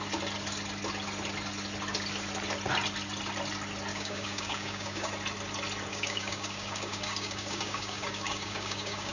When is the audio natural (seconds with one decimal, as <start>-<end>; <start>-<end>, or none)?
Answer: 0.0-3.9; 5.1-5.9